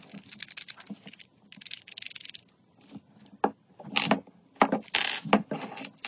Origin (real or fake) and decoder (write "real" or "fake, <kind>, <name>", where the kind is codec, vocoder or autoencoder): real